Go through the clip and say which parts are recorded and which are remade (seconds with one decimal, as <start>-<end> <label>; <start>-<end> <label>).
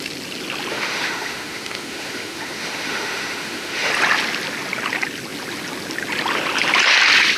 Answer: 0.0-0.7 recorded; 0.7-3.9 remade; 3.9-7.4 recorded